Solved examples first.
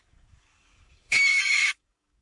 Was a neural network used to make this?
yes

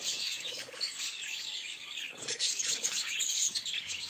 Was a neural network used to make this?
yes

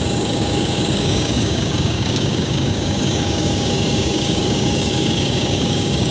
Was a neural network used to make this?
yes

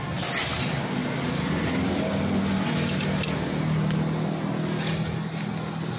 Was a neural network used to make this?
no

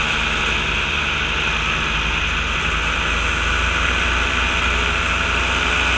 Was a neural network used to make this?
no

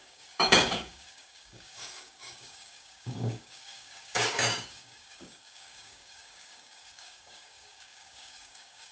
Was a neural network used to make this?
yes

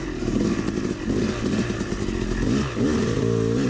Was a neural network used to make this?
no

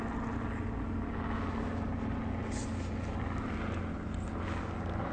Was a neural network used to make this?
no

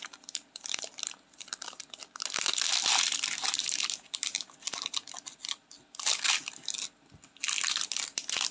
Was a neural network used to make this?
no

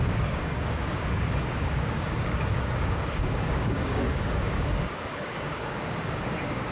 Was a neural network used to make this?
yes